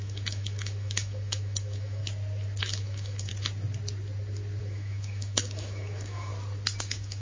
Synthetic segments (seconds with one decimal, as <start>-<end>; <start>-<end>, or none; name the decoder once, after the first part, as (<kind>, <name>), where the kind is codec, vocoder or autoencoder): 0.0-2.0 (autoencoder, DAC-VAE); 2.6-3.3; 4.6-6.3; 6.8-7.2